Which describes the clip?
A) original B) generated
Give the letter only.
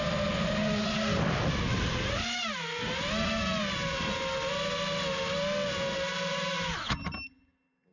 A